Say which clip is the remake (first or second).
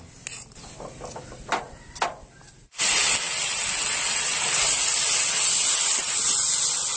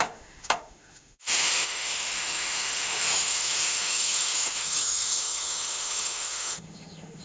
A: second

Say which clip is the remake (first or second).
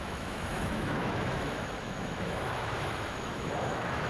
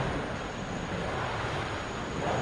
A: first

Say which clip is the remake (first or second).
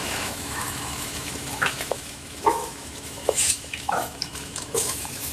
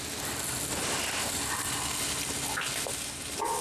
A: first